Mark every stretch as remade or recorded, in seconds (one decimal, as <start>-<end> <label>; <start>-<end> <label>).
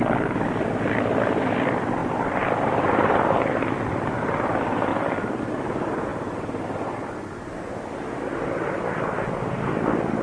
0.0-2.0 recorded; 2.0-3.8 remade; 3.8-4.9 recorded; 4.9-5.4 remade; 5.4-10.2 recorded